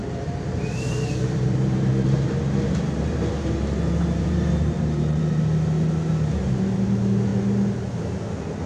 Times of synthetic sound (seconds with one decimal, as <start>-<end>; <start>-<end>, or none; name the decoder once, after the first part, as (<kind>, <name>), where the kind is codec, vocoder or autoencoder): 0.0-5.2 (vocoder, BigVGAN v2)